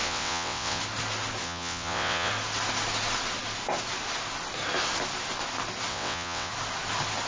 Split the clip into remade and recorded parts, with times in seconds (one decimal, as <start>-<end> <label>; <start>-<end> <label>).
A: 0.0-0.8 remade; 0.8-1.4 recorded; 1.4-2.3 remade; 2.3-5.9 recorded; 5.9-6.5 remade; 6.5-7.3 recorded